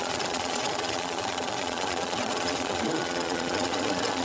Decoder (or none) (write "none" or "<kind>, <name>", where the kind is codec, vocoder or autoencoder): vocoder, Vocos